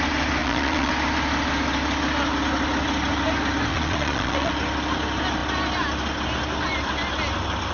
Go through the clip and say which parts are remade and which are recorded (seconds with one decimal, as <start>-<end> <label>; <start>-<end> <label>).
0.0-0.4 recorded; 0.4-0.9 remade; 0.9-3.7 recorded; 3.7-4.5 remade; 4.5-7.7 recorded